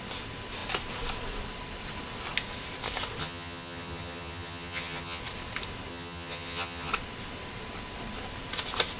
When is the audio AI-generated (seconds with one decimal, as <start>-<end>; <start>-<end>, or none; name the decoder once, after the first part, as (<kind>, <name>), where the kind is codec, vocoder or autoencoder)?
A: 3.2-5.2 (vocoder, HiFi-GAN); 5.9-6.9